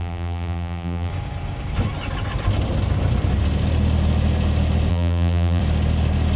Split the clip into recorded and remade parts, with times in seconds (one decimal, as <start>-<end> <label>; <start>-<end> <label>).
0.0-1.1 remade; 1.1-4.9 recorded; 4.9-5.6 remade; 5.6-6.4 recorded